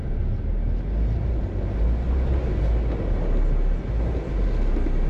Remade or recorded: recorded